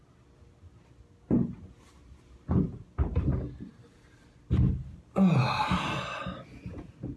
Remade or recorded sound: recorded